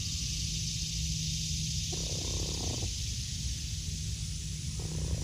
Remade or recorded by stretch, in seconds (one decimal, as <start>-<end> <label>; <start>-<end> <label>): 0.0-5.2 recorded

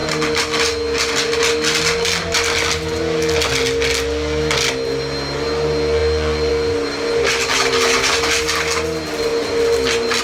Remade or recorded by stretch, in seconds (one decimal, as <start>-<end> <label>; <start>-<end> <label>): 0.0-10.2 recorded

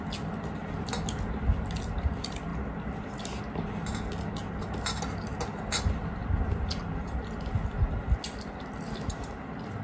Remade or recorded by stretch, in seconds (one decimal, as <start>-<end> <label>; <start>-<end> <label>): 0.0-9.8 recorded

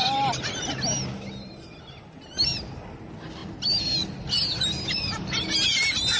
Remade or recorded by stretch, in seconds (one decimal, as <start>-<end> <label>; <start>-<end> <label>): 0.0-6.2 recorded

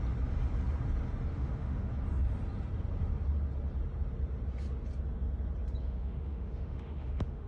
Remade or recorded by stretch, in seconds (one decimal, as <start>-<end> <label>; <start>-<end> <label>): 0.0-1.3 recorded; 1.3-1.9 remade; 1.9-5.8 recorded; 5.8-7.5 remade